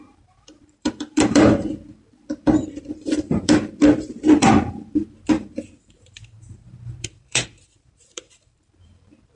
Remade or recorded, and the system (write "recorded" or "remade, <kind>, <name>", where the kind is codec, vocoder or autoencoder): remade, vocoder, BigVGAN v2